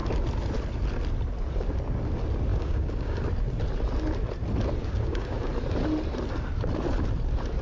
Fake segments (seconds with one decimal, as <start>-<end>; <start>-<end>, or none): 2.5-3.2; 4.8-5.5